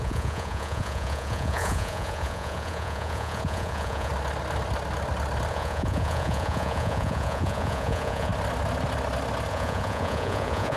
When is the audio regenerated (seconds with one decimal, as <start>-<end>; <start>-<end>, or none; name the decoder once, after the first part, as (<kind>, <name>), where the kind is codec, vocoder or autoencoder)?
0.0-4.1 (vocoder, Vocos); 5.5-8.3; 9.5-10.8